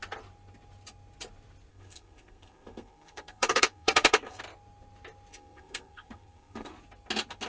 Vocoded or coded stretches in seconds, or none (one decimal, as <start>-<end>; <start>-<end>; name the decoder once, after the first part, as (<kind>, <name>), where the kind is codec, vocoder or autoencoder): 1.7-4.4 (codec, SNAC); 5.3-6.7